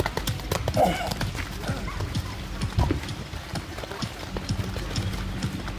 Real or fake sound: real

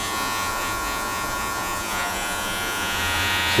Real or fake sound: fake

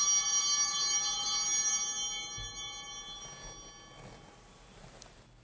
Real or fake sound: real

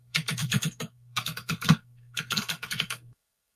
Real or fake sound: fake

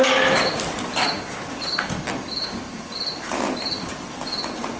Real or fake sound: fake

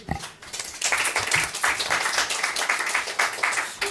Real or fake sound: real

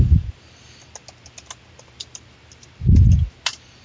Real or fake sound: real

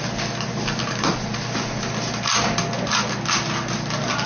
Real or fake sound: real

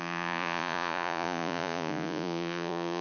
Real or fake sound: fake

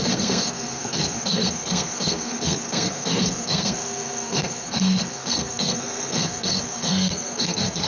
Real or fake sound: fake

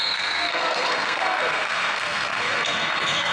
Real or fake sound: fake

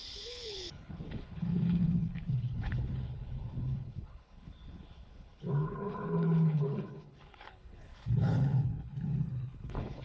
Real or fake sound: fake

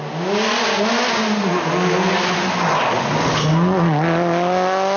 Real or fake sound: real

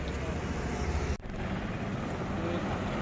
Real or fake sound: real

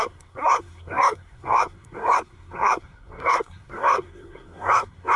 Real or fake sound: fake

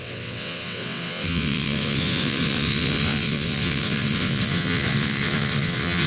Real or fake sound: fake